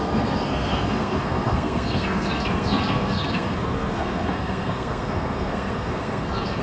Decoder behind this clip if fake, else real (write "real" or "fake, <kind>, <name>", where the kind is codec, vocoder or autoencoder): fake, codec, SNAC